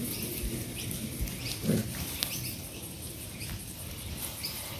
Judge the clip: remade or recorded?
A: recorded